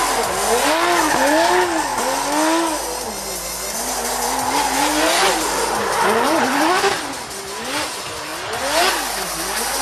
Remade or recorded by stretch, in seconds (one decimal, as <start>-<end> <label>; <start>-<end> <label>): 0.0-9.8 recorded